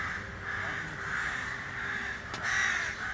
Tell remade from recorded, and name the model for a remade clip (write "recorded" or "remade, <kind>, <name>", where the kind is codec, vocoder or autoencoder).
recorded